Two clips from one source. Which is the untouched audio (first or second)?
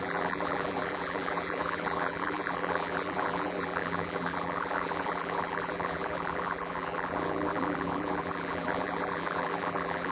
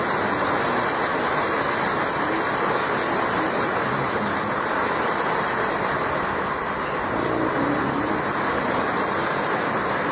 second